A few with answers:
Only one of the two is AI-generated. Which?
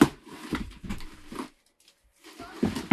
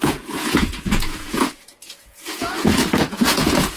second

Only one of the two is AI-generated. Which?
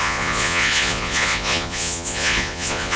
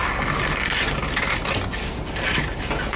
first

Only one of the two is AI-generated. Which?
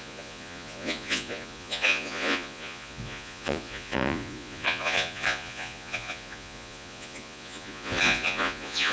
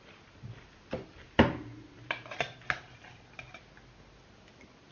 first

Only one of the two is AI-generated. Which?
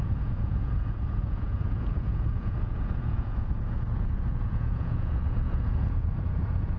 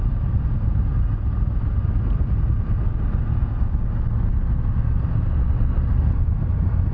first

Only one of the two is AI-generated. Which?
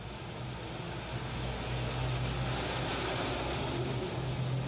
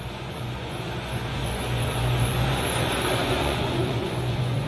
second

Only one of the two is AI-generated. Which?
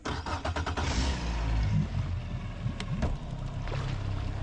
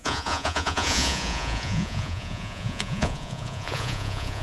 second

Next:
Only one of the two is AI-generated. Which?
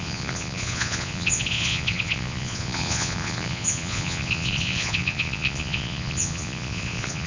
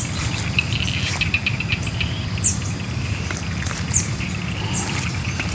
first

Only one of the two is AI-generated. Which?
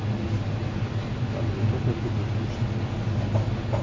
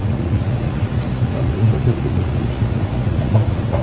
second